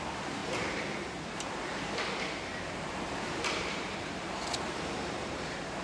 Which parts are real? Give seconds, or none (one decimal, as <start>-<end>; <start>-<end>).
0.0-0.4; 2.0-2.5